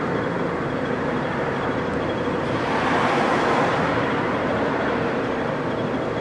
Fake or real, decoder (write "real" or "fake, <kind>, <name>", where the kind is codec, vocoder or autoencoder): fake, vocoder, BigVGAN v2